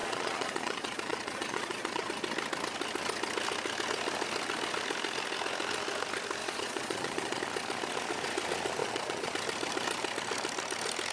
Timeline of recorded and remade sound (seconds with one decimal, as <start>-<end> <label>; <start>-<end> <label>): 0.0-2.1 remade; 2.1-6.4 recorded; 6.4-7.4 remade; 7.4-8.8 recorded; 8.8-9.3 remade; 9.3-11.1 recorded